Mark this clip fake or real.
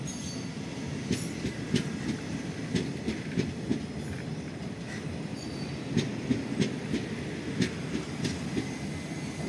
real